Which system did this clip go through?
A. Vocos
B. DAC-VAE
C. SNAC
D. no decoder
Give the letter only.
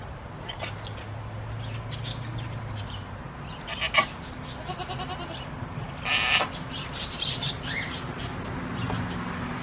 D